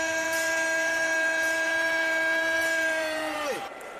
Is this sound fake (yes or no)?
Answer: yes